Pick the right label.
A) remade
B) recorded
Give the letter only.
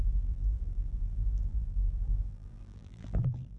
A